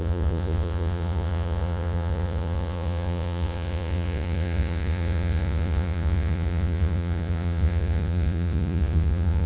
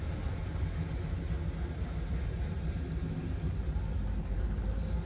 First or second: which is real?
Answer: second